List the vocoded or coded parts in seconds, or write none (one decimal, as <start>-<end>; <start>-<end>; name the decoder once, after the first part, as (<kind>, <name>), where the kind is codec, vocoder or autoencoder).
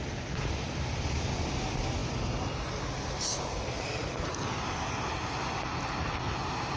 none